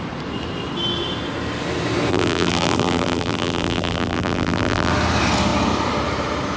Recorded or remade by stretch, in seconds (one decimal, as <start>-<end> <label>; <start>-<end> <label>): 0.0-2.1 recorded; 2.1-4.9 remade; 4.9-6.6 recorded